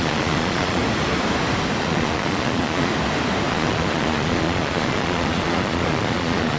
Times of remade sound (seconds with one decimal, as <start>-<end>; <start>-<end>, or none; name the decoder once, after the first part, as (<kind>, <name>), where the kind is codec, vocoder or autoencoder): 0.0-0.8 (vocoder, Vocos); 1.8-2.9; 3.5-6.6